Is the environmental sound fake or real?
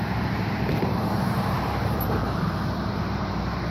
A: fake